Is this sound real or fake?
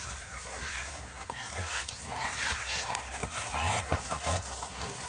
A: fake